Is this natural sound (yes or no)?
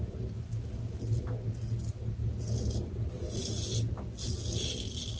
yes